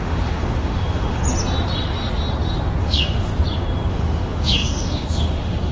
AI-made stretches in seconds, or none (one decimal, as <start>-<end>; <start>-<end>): 0.0-1.2; 2.8-3.3; 3.9-5.7